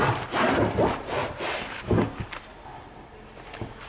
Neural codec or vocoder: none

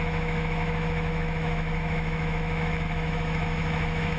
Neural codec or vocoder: autoencoder, DAC-VAE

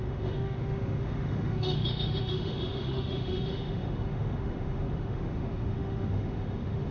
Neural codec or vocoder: autoencoder, DAC-VAE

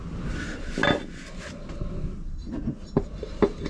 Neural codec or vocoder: none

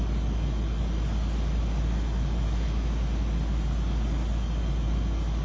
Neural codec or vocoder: none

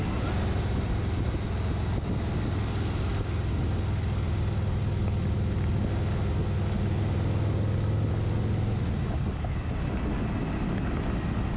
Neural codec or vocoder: none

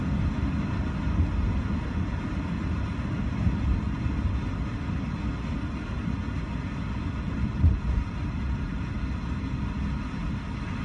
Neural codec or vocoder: none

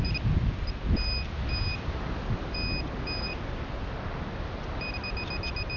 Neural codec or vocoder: none